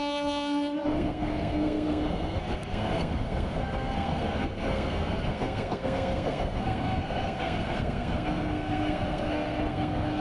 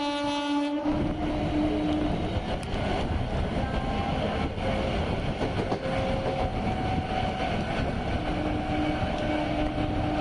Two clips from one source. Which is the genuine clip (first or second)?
second